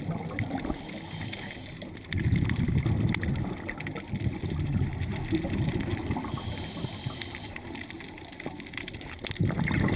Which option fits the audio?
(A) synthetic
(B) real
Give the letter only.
B